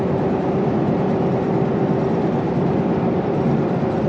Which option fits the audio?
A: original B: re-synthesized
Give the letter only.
A